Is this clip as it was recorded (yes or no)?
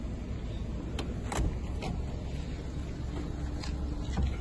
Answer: yes